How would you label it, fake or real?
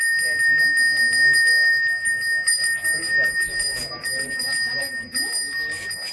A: real